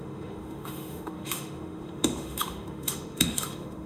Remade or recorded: remade